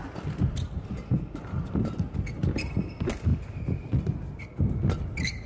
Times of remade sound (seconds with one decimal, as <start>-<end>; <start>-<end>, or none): none